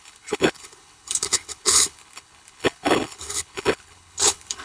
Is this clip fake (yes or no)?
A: yes